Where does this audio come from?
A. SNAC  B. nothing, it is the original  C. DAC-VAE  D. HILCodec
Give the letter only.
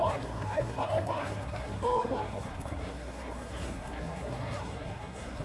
A